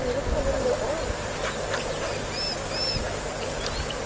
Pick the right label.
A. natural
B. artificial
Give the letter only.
A